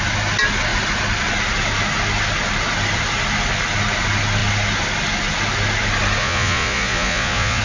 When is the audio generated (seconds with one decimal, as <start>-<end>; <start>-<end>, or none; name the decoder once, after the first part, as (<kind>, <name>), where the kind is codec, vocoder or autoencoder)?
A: 6.2-7.6 (vocoder, Vocos)